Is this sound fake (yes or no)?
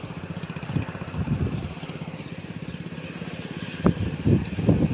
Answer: no